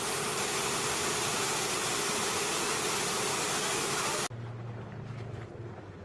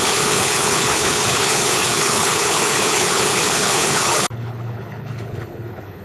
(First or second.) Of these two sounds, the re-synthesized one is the second